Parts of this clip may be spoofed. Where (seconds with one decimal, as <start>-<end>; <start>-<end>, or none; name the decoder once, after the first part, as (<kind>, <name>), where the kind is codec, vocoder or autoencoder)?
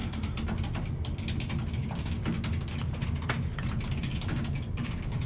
1.7-2.2 (codec, DAC); 4.0-5.3